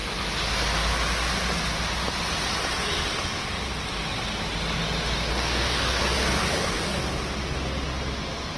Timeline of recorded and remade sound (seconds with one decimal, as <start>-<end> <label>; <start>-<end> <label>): 0.0-5.3 recorded; 5.3-6.0 remade; 6.0-6.4 recorded; 6.4-7.0 remade; 7.0-8.6 recorded